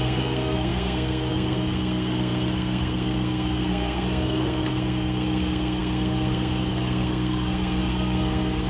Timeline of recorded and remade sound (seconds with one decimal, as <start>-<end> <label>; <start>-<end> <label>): 0.0-8.7 remade